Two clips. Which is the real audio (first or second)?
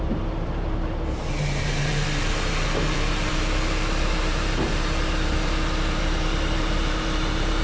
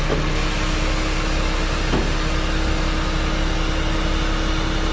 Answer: second